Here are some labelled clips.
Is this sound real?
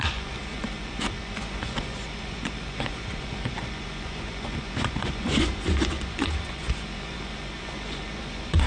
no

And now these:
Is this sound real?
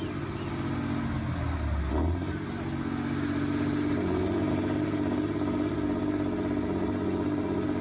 yes